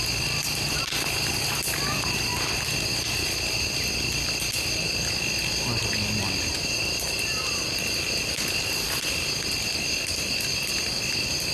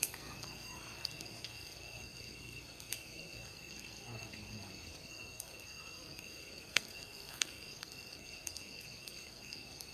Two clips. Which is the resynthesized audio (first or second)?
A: second